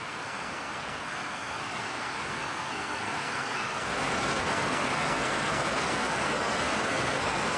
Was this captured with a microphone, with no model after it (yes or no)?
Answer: no